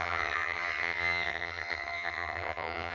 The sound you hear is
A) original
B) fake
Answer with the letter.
B